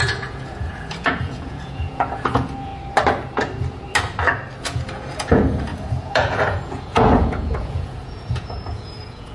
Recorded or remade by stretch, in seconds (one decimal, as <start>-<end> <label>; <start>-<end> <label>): 0.0-2.7 remade; 2.7-4.6 recorded; 4.6-9.3 remade